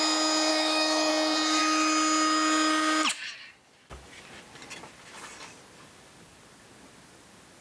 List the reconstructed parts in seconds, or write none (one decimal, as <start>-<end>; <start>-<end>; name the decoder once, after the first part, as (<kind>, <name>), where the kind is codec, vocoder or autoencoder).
0.5-1.1 (autoencoder, DAC-VAE)